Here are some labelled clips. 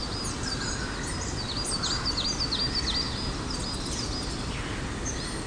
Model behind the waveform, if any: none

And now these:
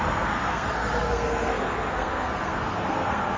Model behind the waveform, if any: codec, SNAC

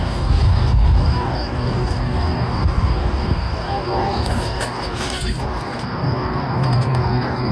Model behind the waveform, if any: codec, DAC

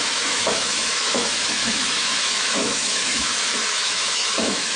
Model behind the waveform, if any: autoencoder, DAC-VAE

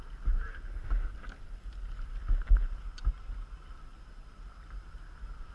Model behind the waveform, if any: none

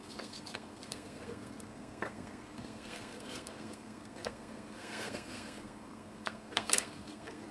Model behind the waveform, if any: codec, SNAC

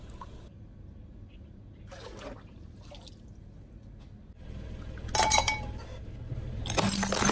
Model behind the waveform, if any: none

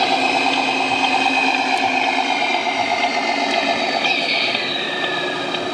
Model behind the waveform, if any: none